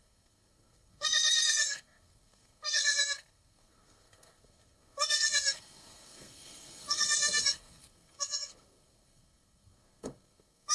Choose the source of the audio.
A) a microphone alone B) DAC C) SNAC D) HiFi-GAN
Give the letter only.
C